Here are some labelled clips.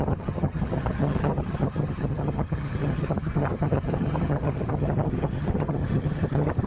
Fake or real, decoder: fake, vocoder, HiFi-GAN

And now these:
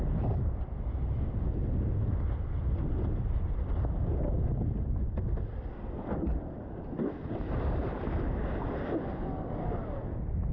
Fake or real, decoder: real